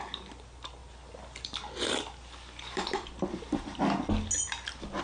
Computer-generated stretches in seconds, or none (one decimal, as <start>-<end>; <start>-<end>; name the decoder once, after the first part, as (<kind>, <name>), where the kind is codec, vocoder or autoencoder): 0.8-3.8 (vocoder, BigVGAN v2)